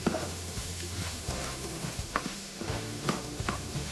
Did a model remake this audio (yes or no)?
yes